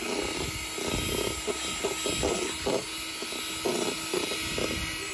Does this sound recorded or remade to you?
recorded